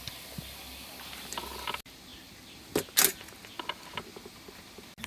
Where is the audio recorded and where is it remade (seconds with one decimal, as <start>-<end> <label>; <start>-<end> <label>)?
0.0-5.1 recorded

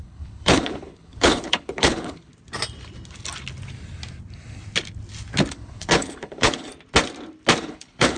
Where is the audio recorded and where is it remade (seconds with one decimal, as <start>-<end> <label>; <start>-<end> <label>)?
0.0-2.3 remade; 2.3-5.5 recorded; 5.5-6.7 remade; 6.7-7.6 recorded; 7.6-8.2 remade

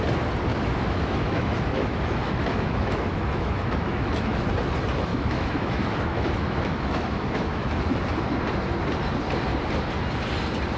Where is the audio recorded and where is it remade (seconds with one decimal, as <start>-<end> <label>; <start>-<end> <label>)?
0.0-0.5 recorded; 0.5-4.5 remade; 4.5-5.1 recorded; 5.1-7.8 remade; 7.8-10.8 recorded

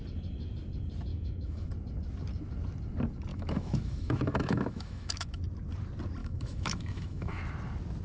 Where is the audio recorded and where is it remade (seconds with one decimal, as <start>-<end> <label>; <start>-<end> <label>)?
0.0-1.1 recorded; 1.1-1.7 remade; 1.7-3.3 recorded; 3.3-5.4 remade; 5.4-6.2 recorded; 6.2-7.4 remade; 7.4-8.0 recorded

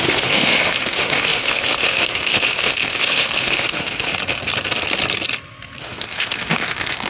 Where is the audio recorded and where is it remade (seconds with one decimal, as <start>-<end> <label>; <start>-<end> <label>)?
0.0-4.1 remade; 4.1-5.8 recorded; 5.8-7.1 remade

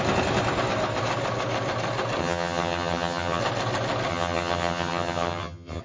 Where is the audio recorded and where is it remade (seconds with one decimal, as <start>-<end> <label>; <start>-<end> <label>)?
0.0-2.2 recorded; 2.2-3.4 remade; 3.4-4.1 recorded; 4.1-5.8 remade